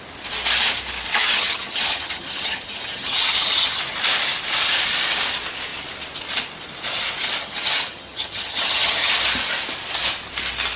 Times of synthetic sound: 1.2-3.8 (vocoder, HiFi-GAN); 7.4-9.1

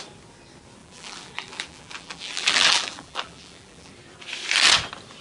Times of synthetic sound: 0.8-3.9 (vocoder, BigVGAN v2)

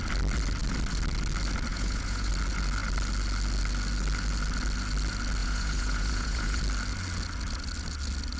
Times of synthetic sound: 1.7-2.3 (vocoder, Vocos); 5.4-6.6

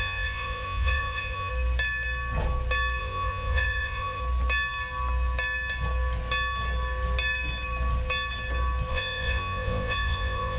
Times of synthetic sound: 0.0-1.5 (vocoder, Vocos); 3.0-4.2; 8.9-10.6

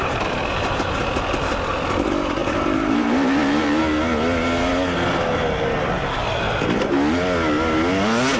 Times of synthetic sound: 0.4-1.0 (vocoder, BigVGAN v2); 2.4-3.8

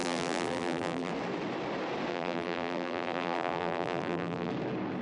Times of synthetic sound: 0.0-1.1 (vocoder, BigVGAN v2); 2.1-4.5

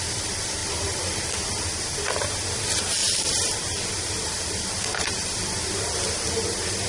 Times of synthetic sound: 0.6-1.1 (vocoder, BigVGAN v2); 3.0-5.6

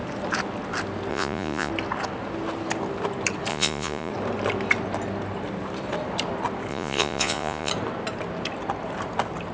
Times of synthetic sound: 1.1-1.7 (vocoder, Vocos); 3.5-4.1; 6.7-7.7